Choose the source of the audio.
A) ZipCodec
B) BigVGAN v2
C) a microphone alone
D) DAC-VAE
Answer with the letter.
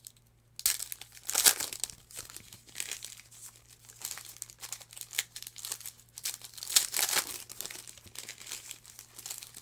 C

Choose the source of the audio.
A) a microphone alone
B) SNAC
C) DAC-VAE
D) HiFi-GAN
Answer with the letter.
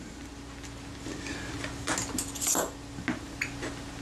A